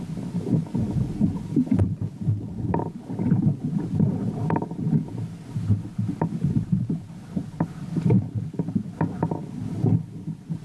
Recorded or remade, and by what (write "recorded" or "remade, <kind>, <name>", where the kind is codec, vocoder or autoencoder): recorded